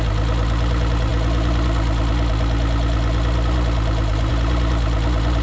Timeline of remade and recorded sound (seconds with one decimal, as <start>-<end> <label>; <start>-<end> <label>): 0.0-5.4 recorded